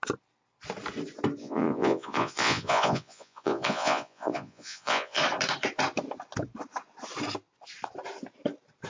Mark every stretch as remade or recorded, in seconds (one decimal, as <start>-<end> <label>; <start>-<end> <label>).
0.0-1.4 recorded; 1.4-5.2 remade; 5.2-8.9 recorded